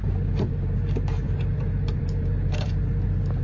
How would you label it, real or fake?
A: fake